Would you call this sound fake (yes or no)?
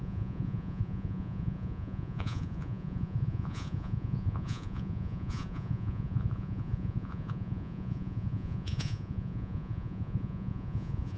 yes